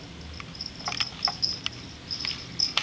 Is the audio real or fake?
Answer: real